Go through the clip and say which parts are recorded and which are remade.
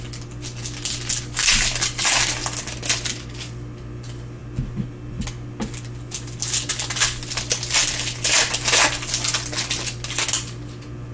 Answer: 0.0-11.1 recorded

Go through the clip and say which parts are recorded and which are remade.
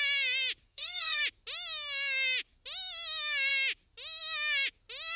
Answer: 0.0-0.7 recorded; 0.7-1.2 remade; 1.2-5.2 recorded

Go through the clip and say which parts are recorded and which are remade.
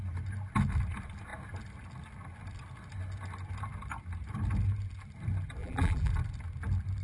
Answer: 0.0-5.6 recorded; 5.6-6.1 remade; 6.1-7.0 recorded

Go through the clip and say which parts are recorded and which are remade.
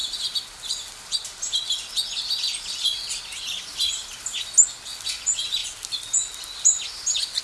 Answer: 0.0-3.2 remade; 3.2-7.4 recorded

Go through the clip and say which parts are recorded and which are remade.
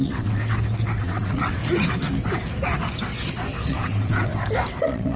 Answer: 0.0-0.4 remade; 0.4-1.0 recorded; 1.0-1.6 remade; 1.6-3.7 recorded; 3.7-4.3 remade; 4.3-4.8 recorded; 4.8-5.2 remade